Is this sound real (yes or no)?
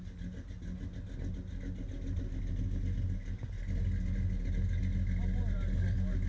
yes